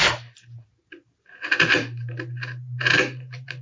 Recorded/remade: recorded